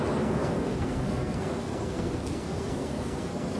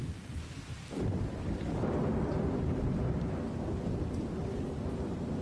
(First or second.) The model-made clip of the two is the first